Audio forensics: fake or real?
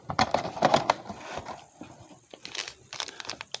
real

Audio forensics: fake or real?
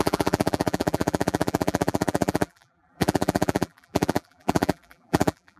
fake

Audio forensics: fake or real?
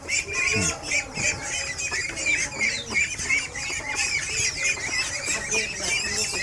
real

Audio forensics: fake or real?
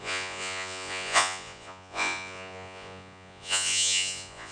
fake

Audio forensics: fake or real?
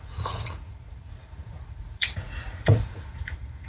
fake